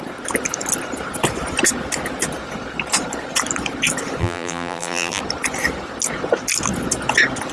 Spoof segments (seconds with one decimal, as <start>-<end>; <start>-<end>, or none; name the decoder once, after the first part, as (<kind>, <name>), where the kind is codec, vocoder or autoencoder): 4.2-5.2 (vocoder, BigVGAN v2)